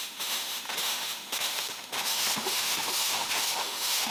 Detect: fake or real fake